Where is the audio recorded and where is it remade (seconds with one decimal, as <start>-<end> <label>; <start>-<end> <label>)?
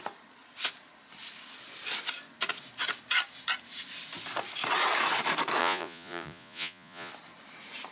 0.0-5.6 recorded; 5.6-7.1 remade; 7.1-7.9 recorded